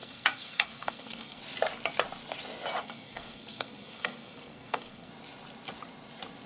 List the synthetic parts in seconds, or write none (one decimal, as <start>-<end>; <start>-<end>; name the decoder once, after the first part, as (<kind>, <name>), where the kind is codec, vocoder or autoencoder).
0.0-1.4 (codec, SNAC); 2.8-5.1